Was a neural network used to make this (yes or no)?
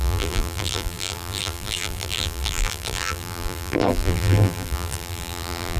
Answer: yes